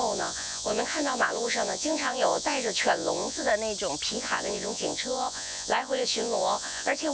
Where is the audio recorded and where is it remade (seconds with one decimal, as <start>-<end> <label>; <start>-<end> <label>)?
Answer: 0.0-3.5 remade; 3.5-4.1 recorded; 4.1-7.1 remade